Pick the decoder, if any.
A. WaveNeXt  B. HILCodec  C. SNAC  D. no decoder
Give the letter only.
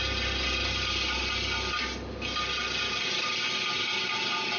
D